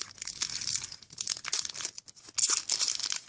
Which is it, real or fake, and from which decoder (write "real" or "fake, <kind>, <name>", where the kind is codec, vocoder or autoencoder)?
real